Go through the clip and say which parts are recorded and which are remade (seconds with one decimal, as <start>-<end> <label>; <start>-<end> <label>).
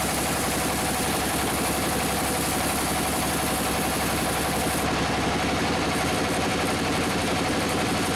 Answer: 0.0-6.9 recorded; 6.9-7.5 remade; 7.5-8.2 recorded